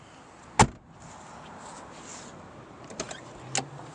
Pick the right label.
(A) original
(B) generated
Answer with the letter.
A